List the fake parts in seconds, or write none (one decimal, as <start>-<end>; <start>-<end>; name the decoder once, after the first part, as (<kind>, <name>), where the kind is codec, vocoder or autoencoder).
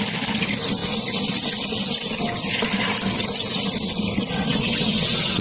4.5-5.4 (vocoder, WaveNeXt)